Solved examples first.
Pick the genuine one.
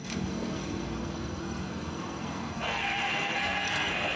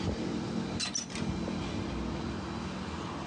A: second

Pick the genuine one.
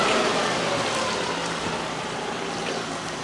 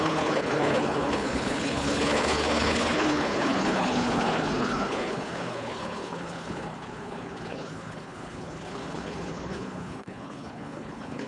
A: first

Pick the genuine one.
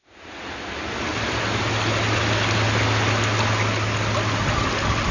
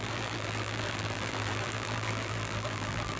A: first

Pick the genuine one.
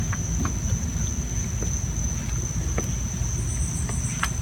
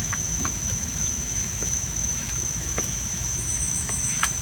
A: first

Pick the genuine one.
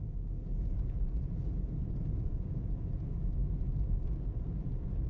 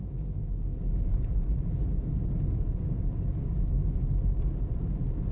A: second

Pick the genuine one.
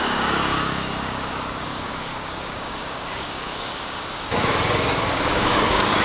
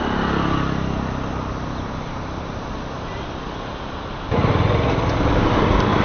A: second